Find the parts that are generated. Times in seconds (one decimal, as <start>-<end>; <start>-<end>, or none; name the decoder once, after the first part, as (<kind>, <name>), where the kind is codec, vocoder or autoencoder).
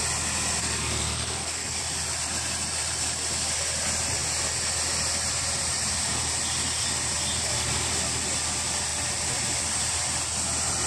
0.6-1.8 (codec, SNAC)